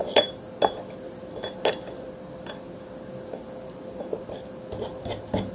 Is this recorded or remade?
recorded